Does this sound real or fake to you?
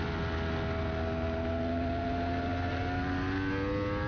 real